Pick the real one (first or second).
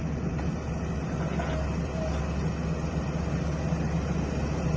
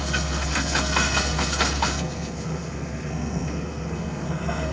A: first